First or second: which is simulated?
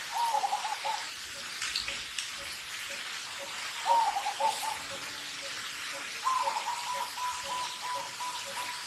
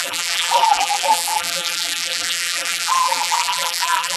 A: second